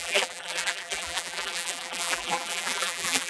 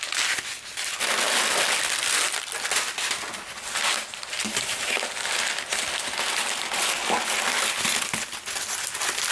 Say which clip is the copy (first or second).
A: first